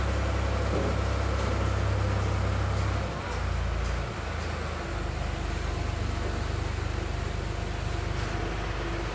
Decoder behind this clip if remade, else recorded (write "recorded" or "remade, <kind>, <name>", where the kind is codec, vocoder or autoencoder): recorded